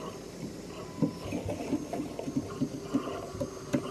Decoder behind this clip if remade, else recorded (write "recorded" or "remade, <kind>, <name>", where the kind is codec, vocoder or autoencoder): recorded